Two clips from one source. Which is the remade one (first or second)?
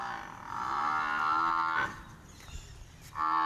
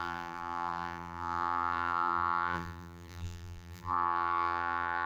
second